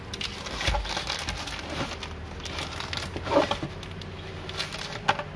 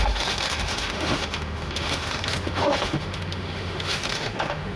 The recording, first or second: first